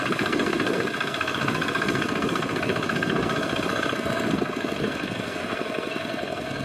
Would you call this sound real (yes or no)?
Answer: no